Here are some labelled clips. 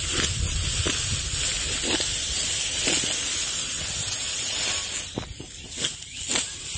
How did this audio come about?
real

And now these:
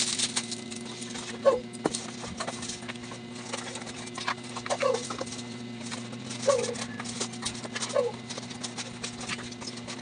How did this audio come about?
real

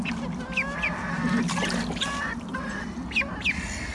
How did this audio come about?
real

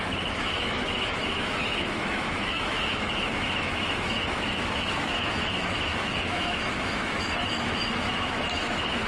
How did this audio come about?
fake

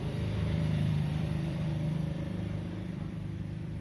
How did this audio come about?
fake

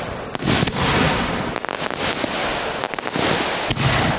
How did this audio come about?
real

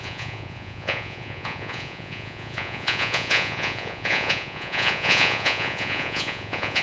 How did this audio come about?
fake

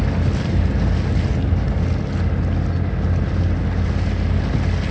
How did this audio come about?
real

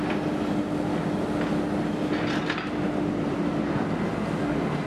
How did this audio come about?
real